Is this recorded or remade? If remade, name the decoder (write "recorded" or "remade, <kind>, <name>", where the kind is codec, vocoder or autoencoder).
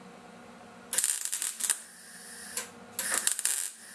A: recorded